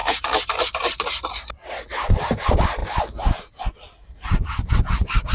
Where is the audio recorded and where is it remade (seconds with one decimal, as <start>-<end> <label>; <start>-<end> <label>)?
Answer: 0.0-1.7 remade; 1.7-2.8 recorded; 2.8-4.7 remade; 4.7-5.3 recorded